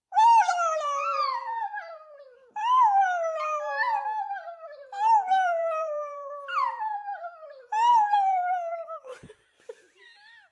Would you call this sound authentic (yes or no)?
no